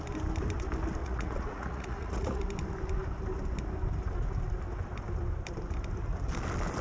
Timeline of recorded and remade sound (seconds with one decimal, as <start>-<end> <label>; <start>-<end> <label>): 0.0-1.0 recorded; 1.0-2.4 remade; 2.4-6.8 recorded